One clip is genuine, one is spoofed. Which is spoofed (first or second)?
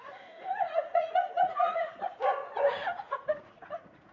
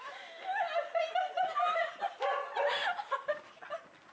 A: first